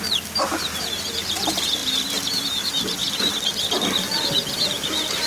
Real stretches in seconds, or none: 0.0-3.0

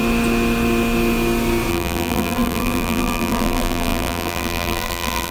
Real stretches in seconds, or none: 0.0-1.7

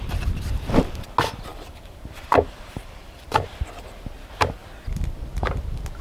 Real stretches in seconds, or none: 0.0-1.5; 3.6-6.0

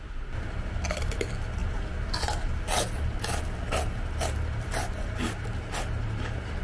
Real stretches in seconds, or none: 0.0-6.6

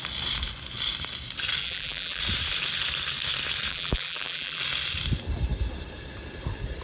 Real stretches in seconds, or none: 0.0-1.6; 2.2-3.7; 4.6-6.8

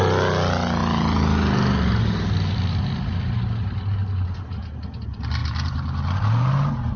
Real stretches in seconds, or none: 0.0-7.0

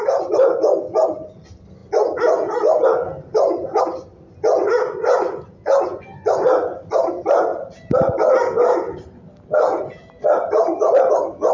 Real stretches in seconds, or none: 0.0-11.5

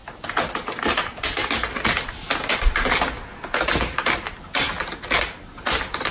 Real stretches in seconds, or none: 0.0-6.1